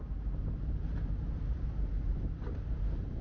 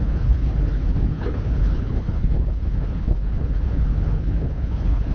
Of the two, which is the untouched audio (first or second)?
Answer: first